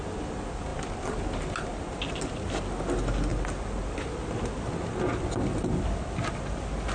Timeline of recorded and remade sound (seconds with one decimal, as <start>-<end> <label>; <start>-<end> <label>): 0.0-6.9 recorded